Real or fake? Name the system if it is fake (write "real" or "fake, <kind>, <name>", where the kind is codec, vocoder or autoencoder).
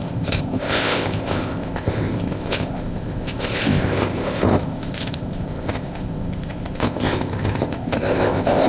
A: fake, codec, ZipCodec